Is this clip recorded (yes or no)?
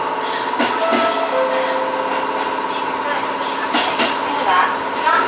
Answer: yes